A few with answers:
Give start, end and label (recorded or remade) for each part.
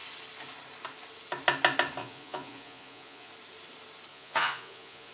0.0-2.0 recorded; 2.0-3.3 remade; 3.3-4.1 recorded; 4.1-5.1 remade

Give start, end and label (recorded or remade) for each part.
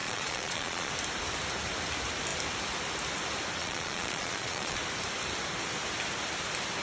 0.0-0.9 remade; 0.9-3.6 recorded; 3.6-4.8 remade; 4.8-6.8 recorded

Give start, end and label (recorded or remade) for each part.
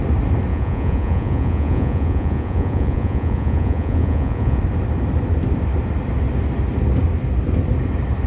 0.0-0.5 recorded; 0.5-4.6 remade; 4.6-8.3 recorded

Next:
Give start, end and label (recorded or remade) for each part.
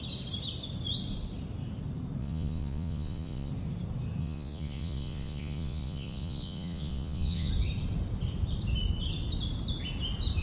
0.0-2.2 recorded; 2.2-3.5 remade; 3.5-4.2 recorded; 4.2-7.5 remade; 7.5-10.4 recorded